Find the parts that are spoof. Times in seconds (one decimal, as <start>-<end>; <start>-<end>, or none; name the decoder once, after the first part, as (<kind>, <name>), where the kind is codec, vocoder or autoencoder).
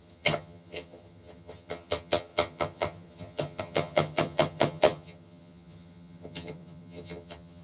0.0-7.6 (vocoder, HiFi-GAN)